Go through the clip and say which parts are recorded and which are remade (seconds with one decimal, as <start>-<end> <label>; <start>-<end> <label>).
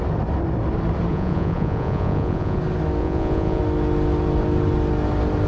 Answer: 0.0-1.1 recorded; 1.1-2.6 remade; 2.6-3.0 recorded; 3.0-3.6 remade; 3.6-5.5 recorded